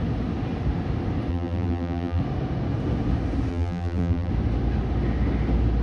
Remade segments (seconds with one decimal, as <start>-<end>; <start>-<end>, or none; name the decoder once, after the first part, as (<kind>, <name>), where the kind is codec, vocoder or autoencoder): 1.3-2.2 (vocoder, BigVGAN v2); 3.5-4.3